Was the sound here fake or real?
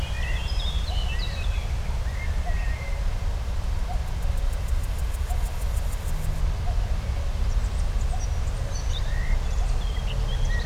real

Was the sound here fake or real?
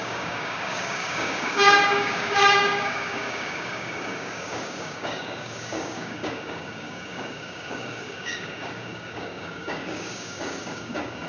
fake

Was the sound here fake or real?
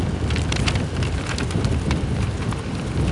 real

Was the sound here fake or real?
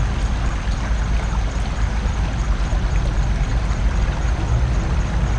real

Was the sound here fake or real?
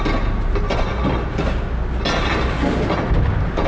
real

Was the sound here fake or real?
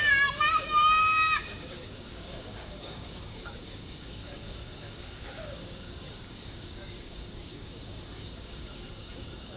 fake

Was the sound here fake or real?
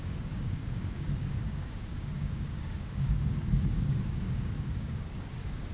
fake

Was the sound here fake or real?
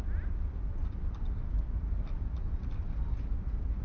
real